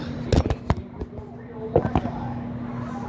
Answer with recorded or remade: recorded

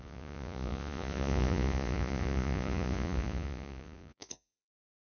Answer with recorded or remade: remade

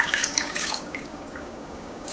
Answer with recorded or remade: remade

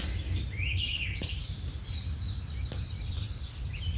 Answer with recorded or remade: recorded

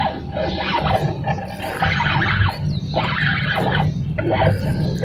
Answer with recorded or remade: recorded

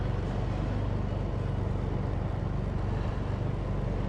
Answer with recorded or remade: recorded